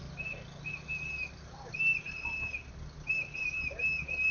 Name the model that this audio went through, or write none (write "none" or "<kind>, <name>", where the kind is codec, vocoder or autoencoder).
none